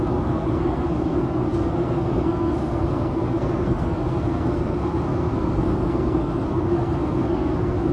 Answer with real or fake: fake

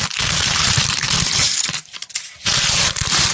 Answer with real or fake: fake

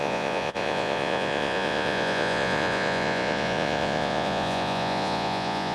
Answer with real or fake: fake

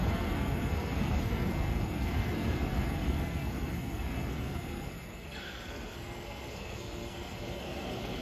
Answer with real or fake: fake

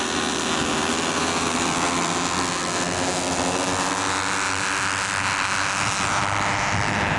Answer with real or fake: real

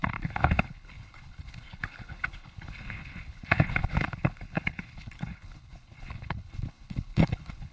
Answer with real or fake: fake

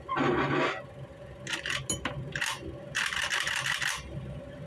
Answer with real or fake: real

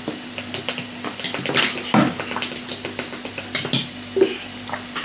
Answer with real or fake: real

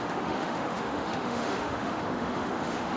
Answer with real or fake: fake